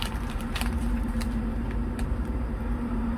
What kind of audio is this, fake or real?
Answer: fake